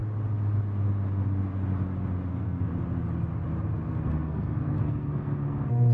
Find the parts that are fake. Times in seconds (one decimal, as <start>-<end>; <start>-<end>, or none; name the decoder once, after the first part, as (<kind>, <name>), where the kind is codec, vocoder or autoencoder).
2.3-2.7 (codec, SNAC); 4.0-5.9